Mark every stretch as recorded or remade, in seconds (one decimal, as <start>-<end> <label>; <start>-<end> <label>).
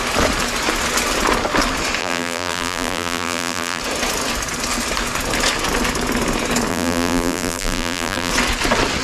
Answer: 0.0-2.0 recorded; 2.0-3.8 remade; 3.8-6.7 recorded; 6.7-8.3 remade; 8.3-9.0 recorded